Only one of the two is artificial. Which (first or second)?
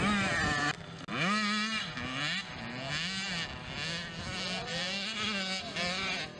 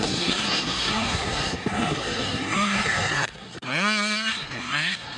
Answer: second